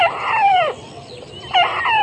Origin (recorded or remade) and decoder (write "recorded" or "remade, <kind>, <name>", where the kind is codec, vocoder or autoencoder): recorded